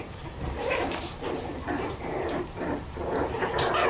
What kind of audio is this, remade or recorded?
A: remade